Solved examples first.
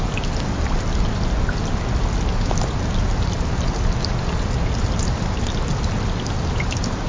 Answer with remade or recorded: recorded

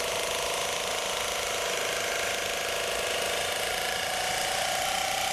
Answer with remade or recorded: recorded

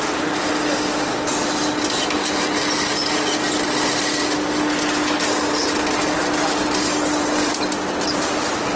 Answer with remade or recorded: recorded